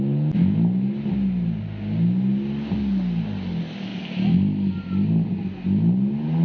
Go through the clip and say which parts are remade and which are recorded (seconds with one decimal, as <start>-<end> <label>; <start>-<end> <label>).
0.0-6.4 recorded